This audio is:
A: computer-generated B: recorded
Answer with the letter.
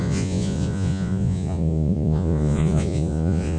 A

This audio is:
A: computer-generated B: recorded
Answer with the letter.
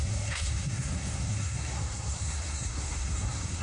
A